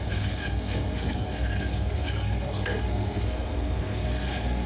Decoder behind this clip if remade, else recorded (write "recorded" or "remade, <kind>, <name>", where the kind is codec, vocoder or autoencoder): remade, codec, SNAC